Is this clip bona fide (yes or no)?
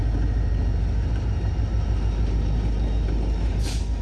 yes